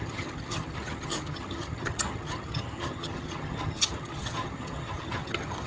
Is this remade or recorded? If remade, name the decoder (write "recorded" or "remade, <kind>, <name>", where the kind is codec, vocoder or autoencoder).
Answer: remade, vocoder, HiFi-GAN